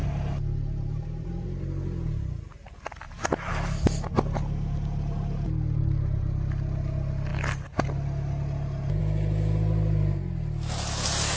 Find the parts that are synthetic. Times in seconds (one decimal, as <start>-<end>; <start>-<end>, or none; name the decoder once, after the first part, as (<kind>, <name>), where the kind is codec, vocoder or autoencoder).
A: none